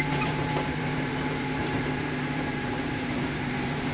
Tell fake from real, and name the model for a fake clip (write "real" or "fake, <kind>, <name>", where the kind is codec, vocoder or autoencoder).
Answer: fake, vocoder, BigVGAN v2